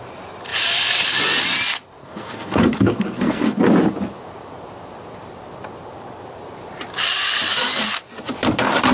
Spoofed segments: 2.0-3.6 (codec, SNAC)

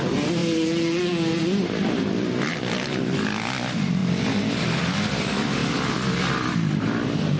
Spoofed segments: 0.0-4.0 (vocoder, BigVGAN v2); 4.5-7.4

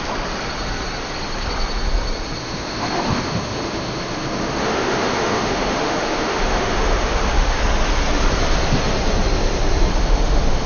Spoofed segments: 2.4-7.6 (autoencoder, DAC-VAE); 9.9-10.7